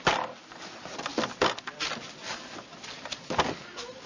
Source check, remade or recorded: recorded